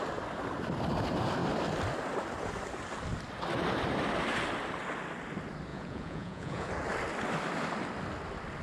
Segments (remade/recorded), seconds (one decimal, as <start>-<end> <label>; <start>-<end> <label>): 0.0-5.7 recorded; 5.7-6.7 remade; 6.7-8.6 recorded